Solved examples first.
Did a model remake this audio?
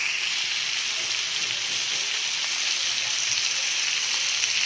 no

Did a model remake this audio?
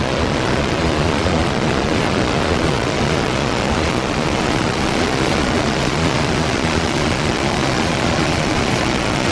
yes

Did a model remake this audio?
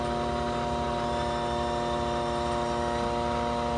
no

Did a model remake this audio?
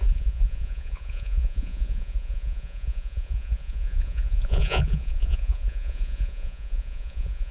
yes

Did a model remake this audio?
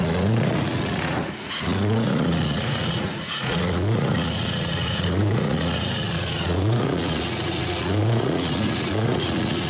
yes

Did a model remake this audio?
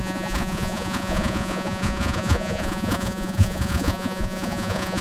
yes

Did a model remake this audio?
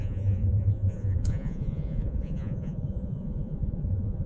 yes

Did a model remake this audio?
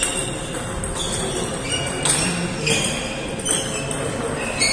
no